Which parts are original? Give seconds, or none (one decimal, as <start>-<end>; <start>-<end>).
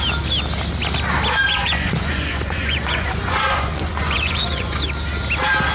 0.0-1.5; 4.8-5.7